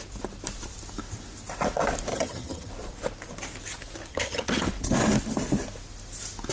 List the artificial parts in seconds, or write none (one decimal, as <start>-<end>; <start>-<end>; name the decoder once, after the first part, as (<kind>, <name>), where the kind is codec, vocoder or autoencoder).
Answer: 2.1-2.7 (vocoder, HiFi-GAN); 4.1-4.7